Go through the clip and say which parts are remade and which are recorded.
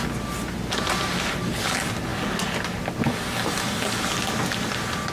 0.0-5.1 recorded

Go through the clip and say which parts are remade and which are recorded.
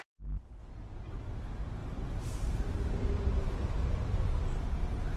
0.0-1.8 recorded; 1.8-4.4 remade; 4.4-5.2 recorded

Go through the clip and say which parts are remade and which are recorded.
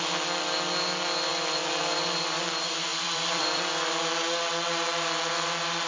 0.0-1.3 recorded; 1.3-1.8 remade; 1.8-2.9 recorded; 2.9-3.6 remade; 3.6-5.9 recorded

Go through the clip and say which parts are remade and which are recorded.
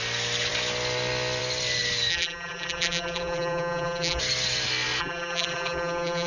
0.0-2.1 recorded; 2.1-4.2 remade; 4.2-5.0 recorded; 5.0-6.3 remade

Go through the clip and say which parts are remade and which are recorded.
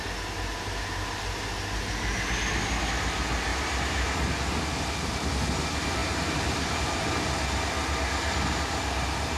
0.0-3.5 recorded; 3.5-4.2 remade; 4.2-6.0 recorded; 6.0-6.8 remade; 6.8-9.4 recorded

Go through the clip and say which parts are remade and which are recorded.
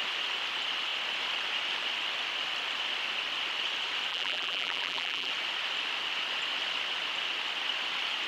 0.0-4.1 recorded; 4.1-5.3 remade; 5.3-8.3 recorded